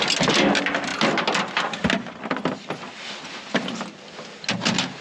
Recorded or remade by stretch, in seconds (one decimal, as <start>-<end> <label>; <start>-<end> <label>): 0.0-5.0 recorded